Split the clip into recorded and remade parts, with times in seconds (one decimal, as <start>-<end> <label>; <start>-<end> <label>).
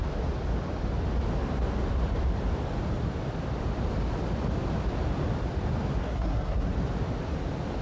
0.0-6.0 recorded; 6.0-6.7 remade; 6.7-7.8 recorded